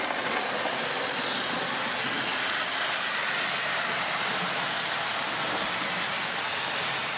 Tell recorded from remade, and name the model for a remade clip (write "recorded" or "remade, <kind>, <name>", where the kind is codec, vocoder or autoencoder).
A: recorded